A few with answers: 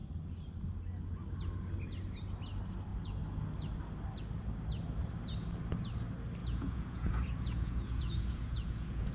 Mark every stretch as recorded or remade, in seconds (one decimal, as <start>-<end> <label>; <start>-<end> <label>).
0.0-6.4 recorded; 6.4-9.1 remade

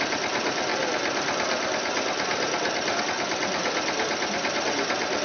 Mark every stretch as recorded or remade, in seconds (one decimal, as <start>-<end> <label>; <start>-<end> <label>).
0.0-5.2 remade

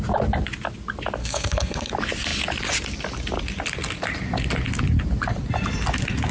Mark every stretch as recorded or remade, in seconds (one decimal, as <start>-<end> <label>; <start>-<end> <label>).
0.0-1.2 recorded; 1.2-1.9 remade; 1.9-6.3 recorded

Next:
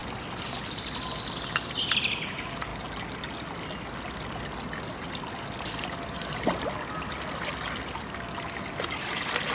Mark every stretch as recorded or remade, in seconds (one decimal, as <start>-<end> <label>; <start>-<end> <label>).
0.0-9.5 recorded

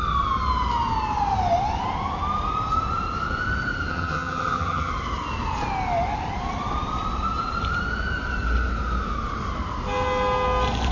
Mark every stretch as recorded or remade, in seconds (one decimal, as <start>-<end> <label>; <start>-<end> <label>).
0.0-3.9 recorded; 3.9-4.9 remade; 4.9-10.9 recorded

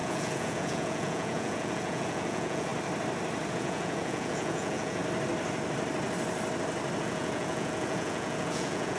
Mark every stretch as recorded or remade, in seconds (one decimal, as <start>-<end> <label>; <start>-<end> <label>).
0.0-2.7 remade; 2.7-3.5 recorded; 3.5-5.0 remade; 5.0-7.0 recorded; 7.0-9.0 remade

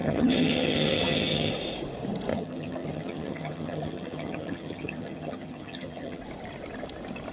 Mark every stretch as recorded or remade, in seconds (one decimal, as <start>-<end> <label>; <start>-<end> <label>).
0.0-1.5 remade; 1.5-2.3 recorded; 2.3-6.2 remade; 6.2-7.3 recorded

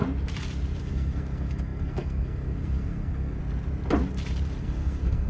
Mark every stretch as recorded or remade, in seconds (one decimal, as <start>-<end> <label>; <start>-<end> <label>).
0.0-0.8 recorded; 0.8-3.4 remade; 3.4-4.6 recorded; 4.6-5.3 remade